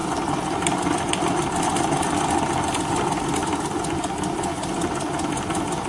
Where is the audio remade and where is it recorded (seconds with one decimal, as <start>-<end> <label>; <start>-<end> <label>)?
0.0-2.8 remade; 2.8-5.9 recorded